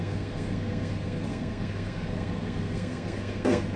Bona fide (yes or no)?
no